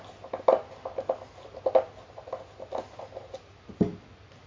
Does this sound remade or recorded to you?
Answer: recorded